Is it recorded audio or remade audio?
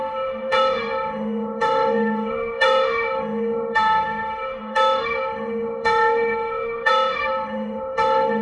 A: remade